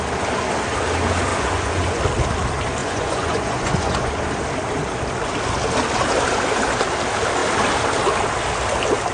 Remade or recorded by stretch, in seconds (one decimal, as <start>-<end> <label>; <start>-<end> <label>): 0.0-1.3 recorded; 1.3-2.0 remade; 2.0-2.8 recorded; 2.8-4.1 remade; 4.1-9.1 recorded